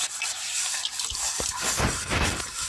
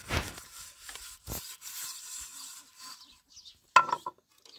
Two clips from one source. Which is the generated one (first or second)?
first